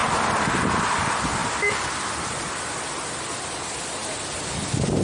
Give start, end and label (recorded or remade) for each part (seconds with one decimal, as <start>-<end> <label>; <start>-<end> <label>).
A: 0.0-5.0 recorded

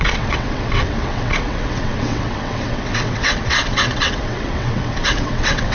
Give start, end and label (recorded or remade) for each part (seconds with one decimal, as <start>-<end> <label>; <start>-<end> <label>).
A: 0.0-5.7 remade